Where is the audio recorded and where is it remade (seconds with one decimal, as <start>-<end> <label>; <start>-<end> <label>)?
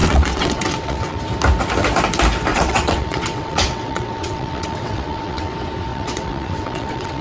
0.0-1.2 remade; 1.2-2.5 recorded; 2.5-5.5 remade; 5.5-5.9 recorded; 5.9-7.2 remade